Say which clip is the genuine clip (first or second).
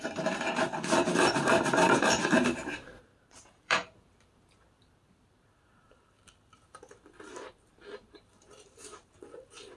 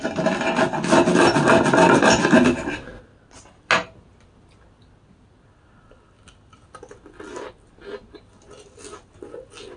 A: second